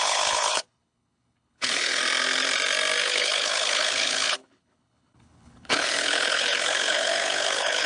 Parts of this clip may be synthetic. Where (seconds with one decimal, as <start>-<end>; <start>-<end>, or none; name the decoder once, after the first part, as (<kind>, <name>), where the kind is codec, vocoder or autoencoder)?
0.0-2.0 (codec, HILCodec); 3.0-7.9